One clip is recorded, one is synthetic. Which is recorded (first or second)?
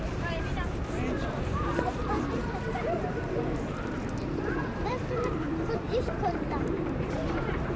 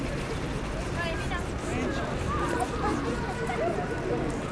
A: second